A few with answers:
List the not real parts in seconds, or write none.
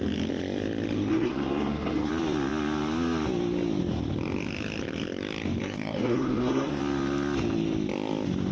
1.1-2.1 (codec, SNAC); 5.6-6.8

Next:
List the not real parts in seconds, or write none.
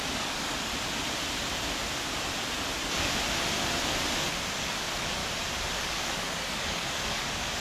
0.0-0.7 (codec, DAC); 4.6-5.2; 5.8-7.6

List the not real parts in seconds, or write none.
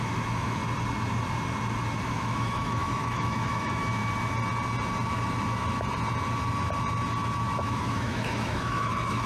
0.0-0.6 (autoencoder, DAC-VAE); 2.0-4.0; 7.6-9.3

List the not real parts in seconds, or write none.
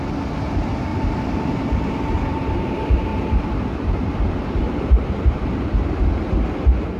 0.9-2.6 (vocoder, BigVGAN v2); 3.1-6.0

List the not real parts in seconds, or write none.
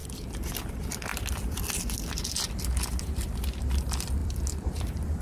4.2-5.2 (vocoder, BigVGAN v2)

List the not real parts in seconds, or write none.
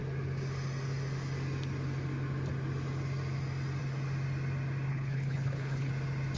4.9-5.9 (codec, HILCodec)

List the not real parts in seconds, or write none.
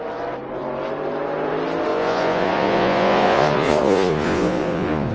1.9-5.1 (vocoder, Vocos)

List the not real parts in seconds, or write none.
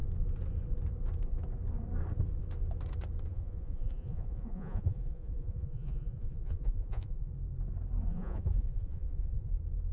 3.3-7.3 (vocoder, Vocos); 8.1-9.5